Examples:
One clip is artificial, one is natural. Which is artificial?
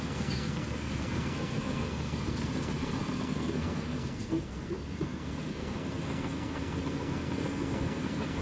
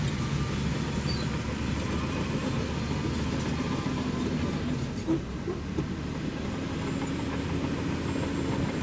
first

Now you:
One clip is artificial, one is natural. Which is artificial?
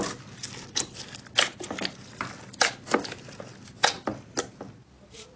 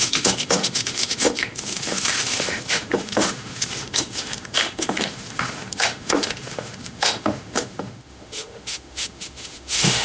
second